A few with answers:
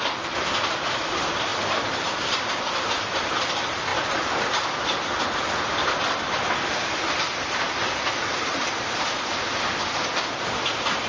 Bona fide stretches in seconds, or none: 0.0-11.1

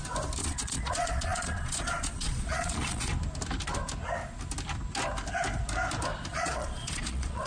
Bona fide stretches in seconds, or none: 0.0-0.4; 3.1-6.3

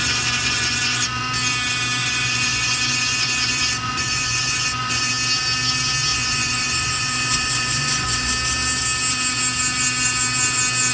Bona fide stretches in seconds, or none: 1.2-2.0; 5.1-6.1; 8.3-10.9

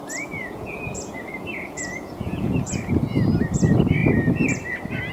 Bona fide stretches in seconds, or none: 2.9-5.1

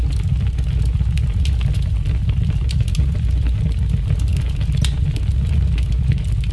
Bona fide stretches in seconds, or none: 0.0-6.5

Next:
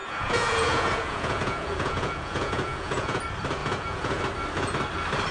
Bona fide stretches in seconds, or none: 3.2-3.6; 4.2-5.3